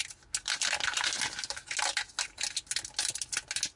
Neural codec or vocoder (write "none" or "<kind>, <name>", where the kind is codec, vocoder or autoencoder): none